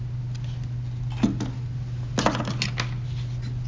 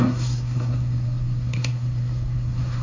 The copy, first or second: second